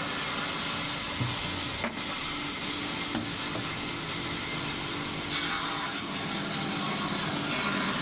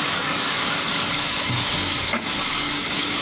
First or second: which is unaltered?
first